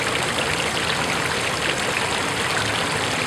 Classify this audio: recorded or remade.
recorded